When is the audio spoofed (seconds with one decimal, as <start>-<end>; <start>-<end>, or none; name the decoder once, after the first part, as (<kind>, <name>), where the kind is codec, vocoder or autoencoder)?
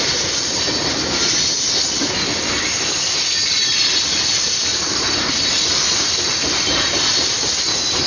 4.7-7.5 (vocoder, BigVGAN v2)